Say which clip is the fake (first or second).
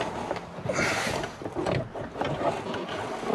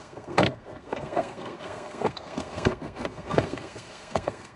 second